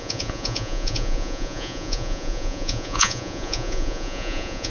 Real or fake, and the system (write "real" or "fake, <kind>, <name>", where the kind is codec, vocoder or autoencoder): fake, vocoder, Vocos